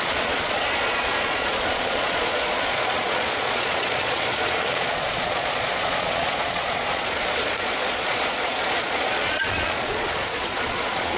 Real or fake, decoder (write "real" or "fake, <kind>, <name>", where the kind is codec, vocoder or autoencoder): fake, vocoder, Vocos